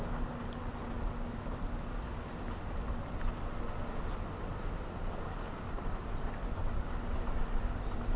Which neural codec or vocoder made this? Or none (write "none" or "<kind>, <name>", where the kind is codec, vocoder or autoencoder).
none